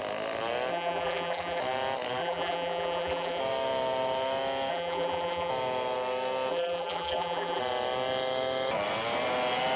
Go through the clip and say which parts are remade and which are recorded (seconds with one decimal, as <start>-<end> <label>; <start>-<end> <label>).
0.0-0.7 recorded; 0.7-1.6 remade; 1.6-2.2 recorded; 2.2-3.4 remade; 3.4-4.7 recorded; 4.7-5.5 remade; 5.5-6.5 recorded; 6.5-7.6 remade; 7.6-9.8 recorded